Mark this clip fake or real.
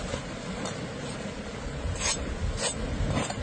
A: real